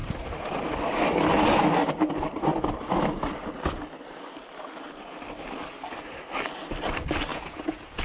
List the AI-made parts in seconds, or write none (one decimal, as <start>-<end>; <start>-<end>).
7.3-8.0